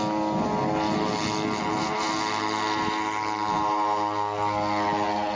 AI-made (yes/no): no